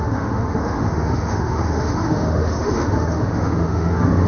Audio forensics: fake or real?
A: fake